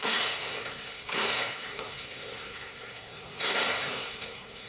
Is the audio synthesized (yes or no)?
yes